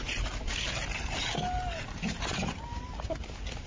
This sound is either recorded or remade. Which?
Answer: recorded